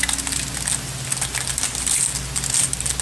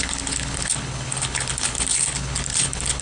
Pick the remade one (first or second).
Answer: second